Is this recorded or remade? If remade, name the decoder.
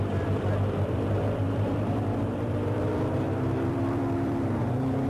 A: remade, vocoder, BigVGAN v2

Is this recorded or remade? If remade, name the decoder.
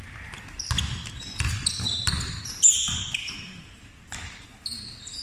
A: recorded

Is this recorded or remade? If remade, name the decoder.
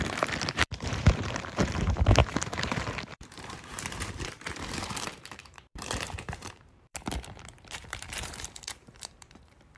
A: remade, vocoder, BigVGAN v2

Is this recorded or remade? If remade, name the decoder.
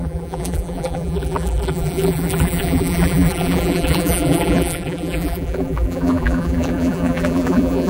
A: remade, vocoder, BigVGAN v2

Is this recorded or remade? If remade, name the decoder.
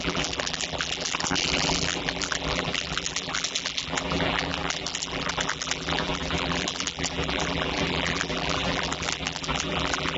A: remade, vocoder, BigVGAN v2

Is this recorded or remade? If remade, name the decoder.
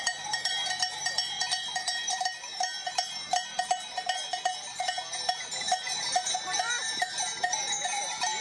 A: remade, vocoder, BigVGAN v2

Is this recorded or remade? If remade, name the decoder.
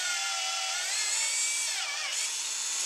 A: recorded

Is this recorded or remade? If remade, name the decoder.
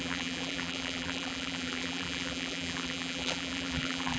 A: remade, vocoder, BigVGAN v2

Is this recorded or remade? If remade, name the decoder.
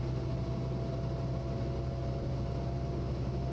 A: recorded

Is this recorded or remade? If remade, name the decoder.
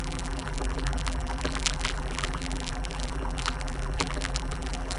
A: remade, vocoder, BigVGAN v2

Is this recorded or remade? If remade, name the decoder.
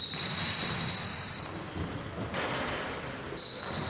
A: recorded